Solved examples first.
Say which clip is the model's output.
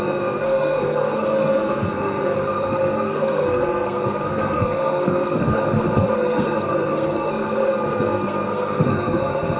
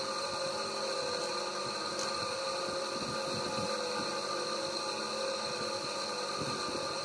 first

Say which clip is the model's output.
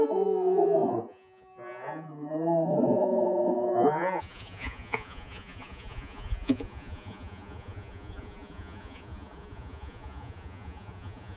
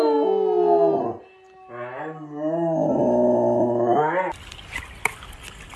first